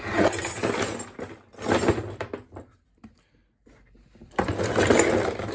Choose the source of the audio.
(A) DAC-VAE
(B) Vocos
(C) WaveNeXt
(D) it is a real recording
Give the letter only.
D